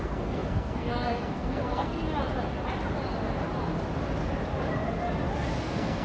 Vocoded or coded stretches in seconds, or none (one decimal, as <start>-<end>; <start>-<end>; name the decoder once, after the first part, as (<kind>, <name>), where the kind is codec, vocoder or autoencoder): 0.0-2.0 (codec, SNAC); 5.6-6.0